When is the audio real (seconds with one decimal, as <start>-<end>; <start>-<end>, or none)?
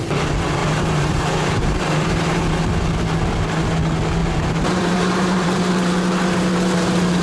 0.0-0.6; 2.4-4.2; 5.7-7.2